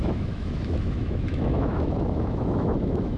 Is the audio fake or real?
fake